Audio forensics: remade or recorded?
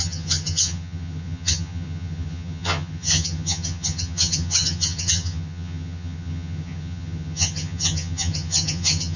remade